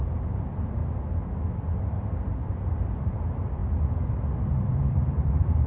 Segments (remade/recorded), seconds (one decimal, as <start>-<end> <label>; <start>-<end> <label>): 0.0-0.8 remade; 0.8-1.9 recorded; 1.9-3.6 remade; 3.6-4.5 recorded; 4.5-5.7 remade

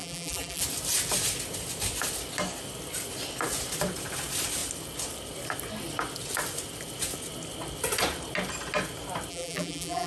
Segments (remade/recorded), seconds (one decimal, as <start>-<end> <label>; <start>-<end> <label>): 0.0-0.6 remade; 0.6-9.3 recorded; 9.3-10.1 remade

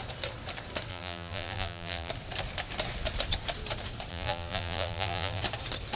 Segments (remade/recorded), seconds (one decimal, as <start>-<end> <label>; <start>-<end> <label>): 0.0-0.9 recorded; 0.9-2.1 remade; 2.1-4.1 recorded; 4.1-5.4 remade; 5.4-6.0 recorded

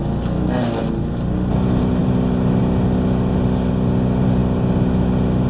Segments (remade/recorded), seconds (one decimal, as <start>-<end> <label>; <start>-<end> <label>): 0.0-5.5 recorded